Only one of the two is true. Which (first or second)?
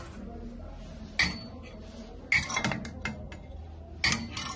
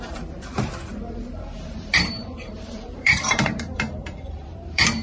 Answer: first